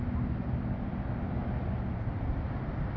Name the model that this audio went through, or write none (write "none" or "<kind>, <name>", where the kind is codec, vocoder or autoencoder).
none